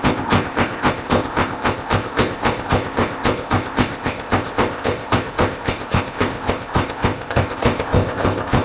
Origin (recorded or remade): remade